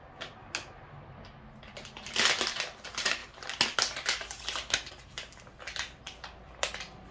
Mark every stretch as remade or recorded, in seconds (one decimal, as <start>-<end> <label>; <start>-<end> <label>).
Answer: 0.0-7.1 recorded